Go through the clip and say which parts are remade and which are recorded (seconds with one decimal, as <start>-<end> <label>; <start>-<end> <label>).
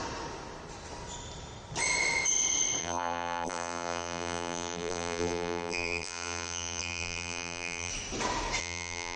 0.0-2.8 recorded; 2.8-7.9 remade; 7.9-8.6 recorded; 8.6-9.2 remade